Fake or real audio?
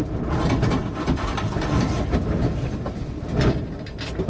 real